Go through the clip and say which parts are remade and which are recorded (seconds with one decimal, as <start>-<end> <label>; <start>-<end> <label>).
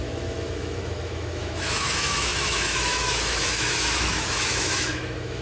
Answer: 0.0-5.4 remade